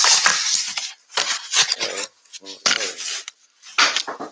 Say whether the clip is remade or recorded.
recorded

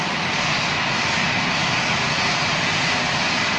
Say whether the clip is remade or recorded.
recorded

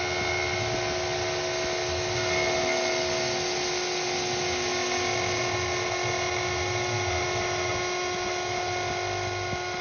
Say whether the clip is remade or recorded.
recorded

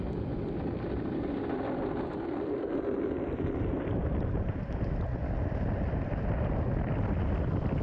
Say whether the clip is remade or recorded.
recorded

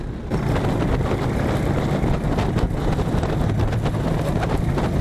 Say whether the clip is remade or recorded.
recorded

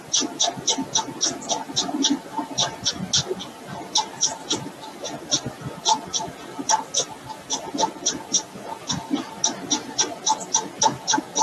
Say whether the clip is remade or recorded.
recorded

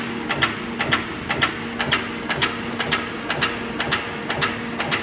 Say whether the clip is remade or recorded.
recorded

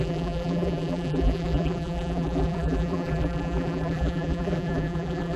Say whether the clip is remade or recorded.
remade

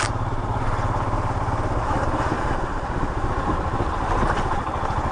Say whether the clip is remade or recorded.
remade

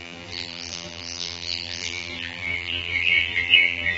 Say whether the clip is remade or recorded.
remade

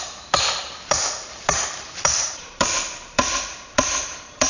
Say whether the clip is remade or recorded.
remade